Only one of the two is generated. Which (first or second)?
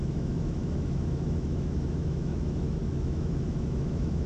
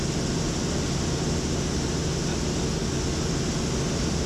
first